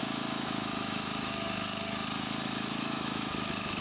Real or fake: fake